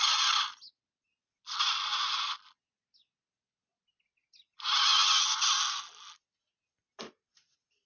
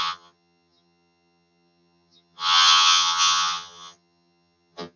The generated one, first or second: second